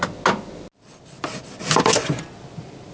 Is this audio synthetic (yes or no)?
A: no